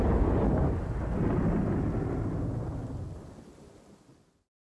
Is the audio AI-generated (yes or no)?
no